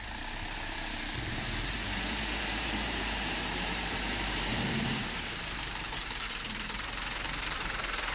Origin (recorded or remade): remade